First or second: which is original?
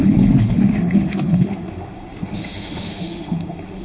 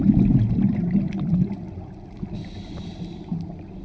second